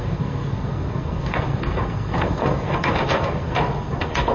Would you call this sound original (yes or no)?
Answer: no